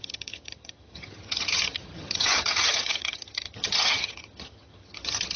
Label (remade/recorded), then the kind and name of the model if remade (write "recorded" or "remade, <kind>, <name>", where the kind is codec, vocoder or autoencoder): remade, vocoder, HiFi-GAN